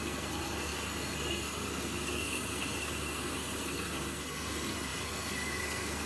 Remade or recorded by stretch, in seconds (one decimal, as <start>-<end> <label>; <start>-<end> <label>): 0.0-6.1 remade

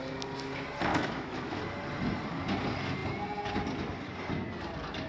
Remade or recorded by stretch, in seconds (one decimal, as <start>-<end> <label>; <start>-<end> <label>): 0.0-0.9 recorded; 0.9-1.6 remade; 1.6-5.1 recorded

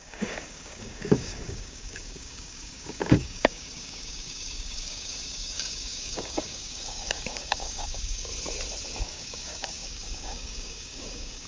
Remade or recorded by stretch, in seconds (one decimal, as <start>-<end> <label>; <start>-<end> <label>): 0.0-8.3 remade; 8.3-9.0 recorded; 9.0-11.5 remade

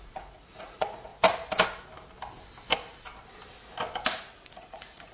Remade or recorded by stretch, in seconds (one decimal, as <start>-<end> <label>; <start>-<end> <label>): 0.0-1.1 remade; 1.1-4.2 recorded; 4.2-5.1 remade

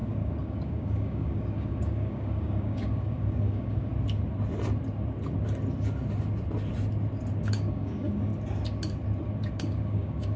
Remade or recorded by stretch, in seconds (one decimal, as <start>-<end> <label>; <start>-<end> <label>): 0.0-3.9 remade; 3.9-7.4 recorded; 7.4-8.3 remade; 8.3-9.5 recorded; 9.5-10.4 remade

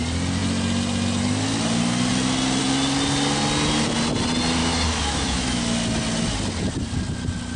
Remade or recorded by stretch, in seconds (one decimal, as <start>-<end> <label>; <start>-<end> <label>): 0.0-4.6 recorded; 4.6-5.6 remade; 5.6-7.6 recorded